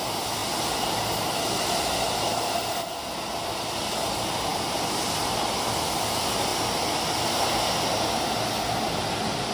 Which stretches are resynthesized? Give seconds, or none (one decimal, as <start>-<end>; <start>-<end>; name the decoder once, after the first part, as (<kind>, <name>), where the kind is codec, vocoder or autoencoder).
none